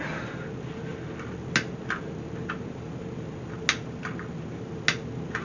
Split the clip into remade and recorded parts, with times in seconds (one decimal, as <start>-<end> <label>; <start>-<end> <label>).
0.0-5.4 recorded